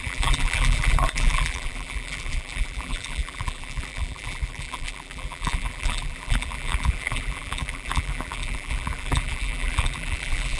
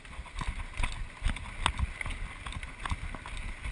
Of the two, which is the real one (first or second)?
second